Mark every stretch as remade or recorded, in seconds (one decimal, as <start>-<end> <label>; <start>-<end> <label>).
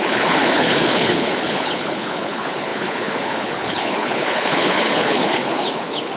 0.0-6.2 remade